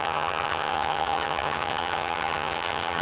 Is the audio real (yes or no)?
no